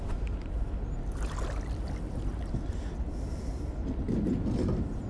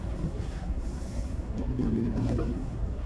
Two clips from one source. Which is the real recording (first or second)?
first